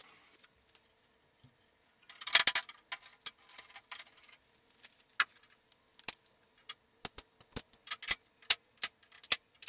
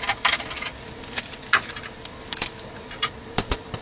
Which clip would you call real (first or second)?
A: first